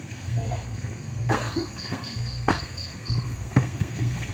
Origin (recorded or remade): remade